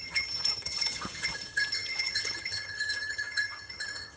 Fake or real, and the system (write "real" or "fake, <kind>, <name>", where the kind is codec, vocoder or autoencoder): fake, vocoder, HiFi-GAN